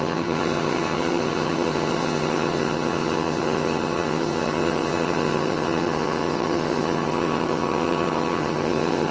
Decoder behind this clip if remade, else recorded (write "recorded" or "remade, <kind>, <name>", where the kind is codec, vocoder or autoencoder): remade, vocoder, HiFi-GAN